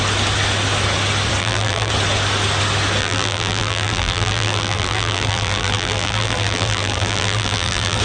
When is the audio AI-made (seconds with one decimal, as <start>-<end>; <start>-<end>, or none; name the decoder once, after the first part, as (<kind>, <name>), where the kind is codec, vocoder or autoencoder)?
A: 1.4-1.9 (vocoder, BigVGAN v2); 3.0-8.0